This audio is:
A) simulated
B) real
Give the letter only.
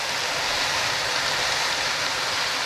B